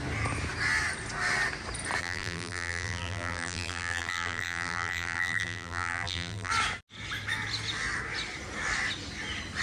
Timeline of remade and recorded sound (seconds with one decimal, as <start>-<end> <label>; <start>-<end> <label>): 0.0-2.0 recorded; 2.0-6.5 remade; 6.5-9.6 recorded